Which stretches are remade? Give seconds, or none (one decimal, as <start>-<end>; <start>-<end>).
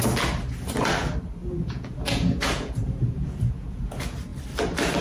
1.4-3.8